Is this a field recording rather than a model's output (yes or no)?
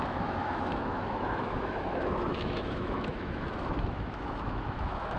no